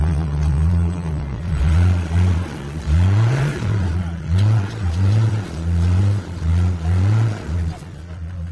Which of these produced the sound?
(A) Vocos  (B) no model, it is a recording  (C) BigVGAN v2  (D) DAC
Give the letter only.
A